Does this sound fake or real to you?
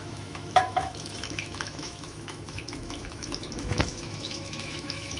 fake